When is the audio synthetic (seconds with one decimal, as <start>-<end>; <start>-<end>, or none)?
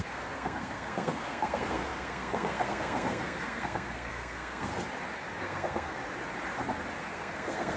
0.0-4.7; 5.4-6.0; 7.0-7.8